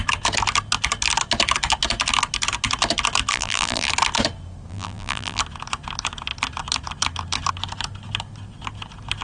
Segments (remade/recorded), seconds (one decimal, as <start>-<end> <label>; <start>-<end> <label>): 0.0-3.3 recorded; 3.3-3.9 remade; 3.9-4.7 recorded; 4.7-5.4 remade; 5.4-9.2 recorded